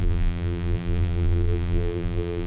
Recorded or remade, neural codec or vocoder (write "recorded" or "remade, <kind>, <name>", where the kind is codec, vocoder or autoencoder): remade, vocoder, BigVGAN v2